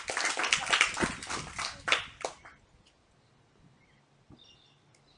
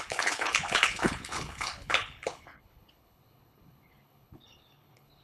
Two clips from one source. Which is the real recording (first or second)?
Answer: first